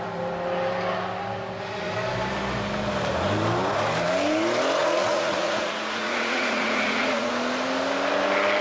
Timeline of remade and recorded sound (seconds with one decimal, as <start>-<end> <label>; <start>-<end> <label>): 0.0-4.8 recorded; 4.8-7.3 remade; 7.3-8.6 recorded